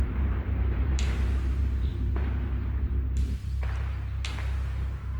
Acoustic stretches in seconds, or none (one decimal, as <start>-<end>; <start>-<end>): 1.9-5.2